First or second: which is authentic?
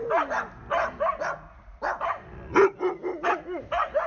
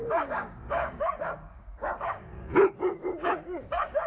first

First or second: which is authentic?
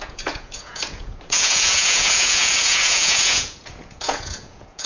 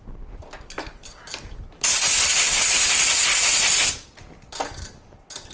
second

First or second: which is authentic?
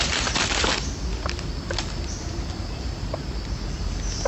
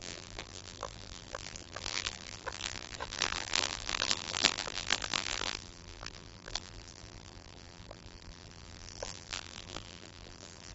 first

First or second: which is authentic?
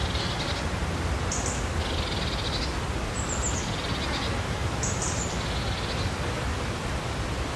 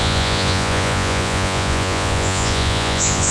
first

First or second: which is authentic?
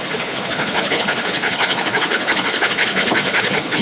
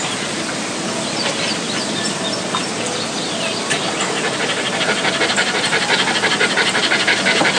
second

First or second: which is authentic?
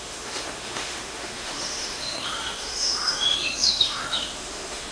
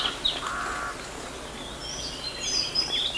second